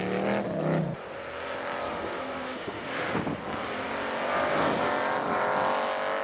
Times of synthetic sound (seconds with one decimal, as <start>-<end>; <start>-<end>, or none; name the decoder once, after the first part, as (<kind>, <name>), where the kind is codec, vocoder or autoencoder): 1.9-3.1 (autoencoder, DAC-VAE)